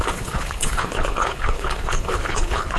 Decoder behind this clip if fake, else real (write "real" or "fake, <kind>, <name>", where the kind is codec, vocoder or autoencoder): fake, codec, HILCodec